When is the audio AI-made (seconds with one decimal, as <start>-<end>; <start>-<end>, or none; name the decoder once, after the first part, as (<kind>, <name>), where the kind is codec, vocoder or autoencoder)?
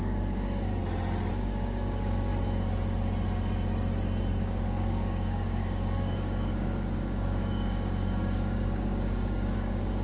0.0-0.7 (codec, DAC); 1.3-2.3; 4.3-10.0